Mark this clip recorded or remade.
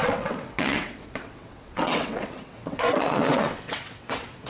remade